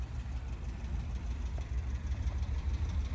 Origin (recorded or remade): remade